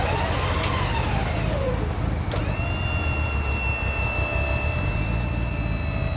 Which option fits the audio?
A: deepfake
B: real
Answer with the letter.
B